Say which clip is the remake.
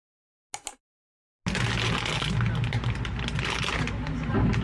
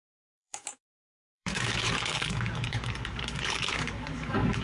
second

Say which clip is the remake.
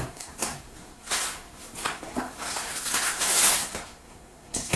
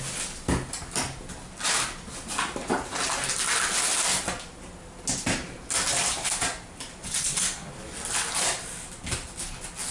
first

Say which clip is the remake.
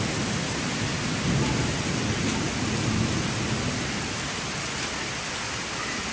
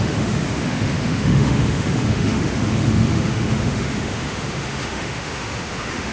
second